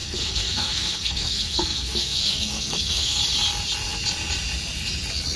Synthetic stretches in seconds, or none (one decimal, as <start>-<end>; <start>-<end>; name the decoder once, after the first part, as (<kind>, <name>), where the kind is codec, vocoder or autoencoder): 0.0-3.2 (codec, SNAC)